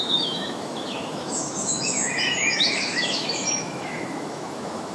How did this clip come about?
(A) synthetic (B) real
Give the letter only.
A